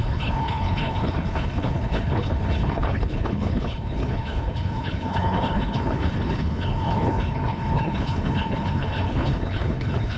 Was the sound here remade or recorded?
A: remade